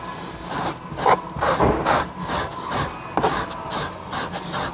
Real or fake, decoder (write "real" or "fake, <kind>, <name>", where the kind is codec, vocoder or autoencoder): real